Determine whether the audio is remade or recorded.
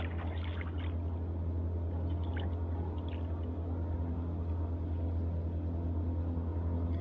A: recorded